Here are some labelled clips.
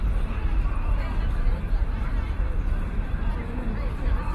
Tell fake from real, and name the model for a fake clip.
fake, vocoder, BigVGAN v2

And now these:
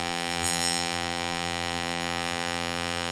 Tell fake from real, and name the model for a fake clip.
fake, vocoder, BigVGAN v2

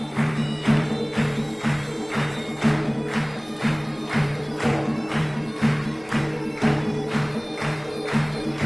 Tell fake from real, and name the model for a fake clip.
fake, vocoder, BigVGAN v2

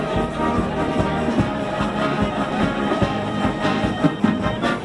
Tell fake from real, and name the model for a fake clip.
fake, vocoder, BigVGAN v2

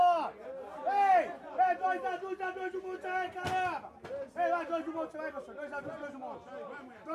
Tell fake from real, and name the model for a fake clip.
real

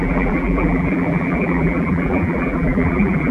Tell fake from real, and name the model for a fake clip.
fake, vocoder, BigVGAN v2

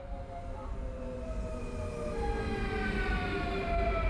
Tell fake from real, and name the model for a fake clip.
real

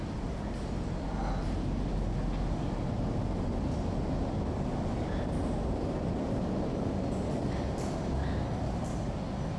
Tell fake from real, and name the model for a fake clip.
real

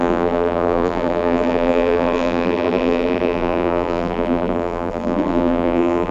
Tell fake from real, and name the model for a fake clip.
fake, vocoder, BigVGAN v2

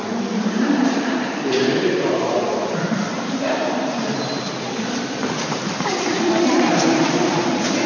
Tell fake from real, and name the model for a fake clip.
fake, vocoder, BigVGAN v2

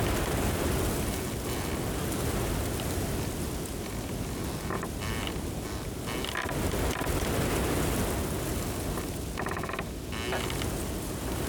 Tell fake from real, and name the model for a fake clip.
real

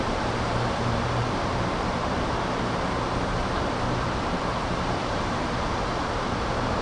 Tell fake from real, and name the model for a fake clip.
fake, vocoder, BigVGAN v2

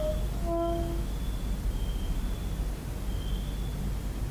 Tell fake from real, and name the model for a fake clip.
real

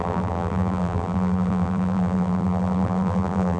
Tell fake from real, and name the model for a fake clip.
fake, vocoder, BigVGAN v2